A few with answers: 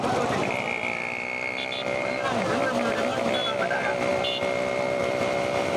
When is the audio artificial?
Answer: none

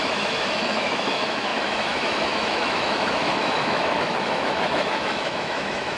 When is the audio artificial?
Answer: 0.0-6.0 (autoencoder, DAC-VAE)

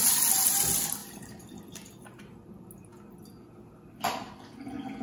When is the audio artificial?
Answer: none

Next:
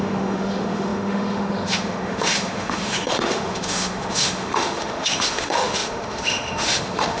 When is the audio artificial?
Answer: 0.0-7.2 (autoencoder, DAC-VAE)